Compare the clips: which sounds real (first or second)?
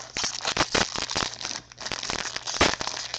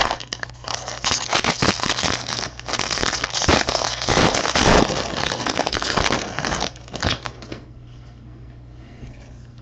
first